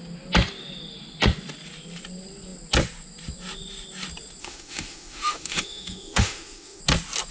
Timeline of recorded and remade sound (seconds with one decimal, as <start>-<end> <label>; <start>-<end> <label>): 0.0-4.4 recorded; 4.4-6.8 remade; 6.8-7.3 recorded